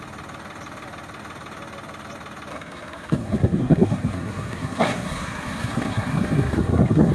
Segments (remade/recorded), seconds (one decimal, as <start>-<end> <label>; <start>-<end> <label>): 0.0-2.5 recorded; 2.5-7.1 remade